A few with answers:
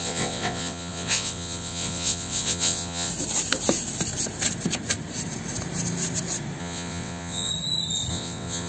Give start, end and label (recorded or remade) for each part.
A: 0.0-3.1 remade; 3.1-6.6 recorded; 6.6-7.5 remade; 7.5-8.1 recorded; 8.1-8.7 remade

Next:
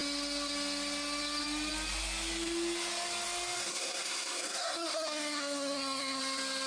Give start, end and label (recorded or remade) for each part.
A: 0.0-3.6 recorded; 3.6-6.2 remade; 6.2-6.7 recorded

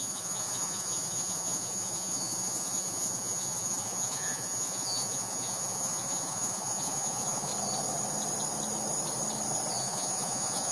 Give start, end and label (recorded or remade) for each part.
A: 0.0-7.5 remade; 7.5-9.8 recorded; 9.8-10.7 remade